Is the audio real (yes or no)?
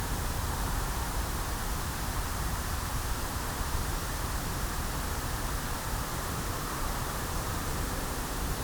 no